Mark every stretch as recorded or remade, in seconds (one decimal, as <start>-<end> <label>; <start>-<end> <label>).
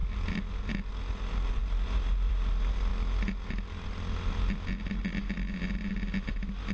0.0-6.7 recorded